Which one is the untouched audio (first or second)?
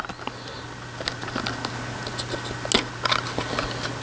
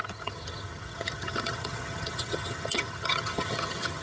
first